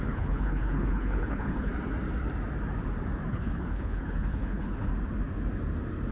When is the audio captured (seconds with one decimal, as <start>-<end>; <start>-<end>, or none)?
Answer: 1.7-3.3; 4.9-6.1